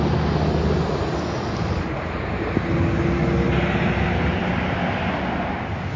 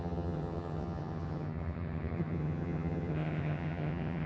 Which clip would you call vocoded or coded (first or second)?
second